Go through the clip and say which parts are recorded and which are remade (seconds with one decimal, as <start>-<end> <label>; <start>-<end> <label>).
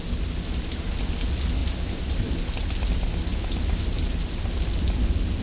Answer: 0.0-5.4 recorded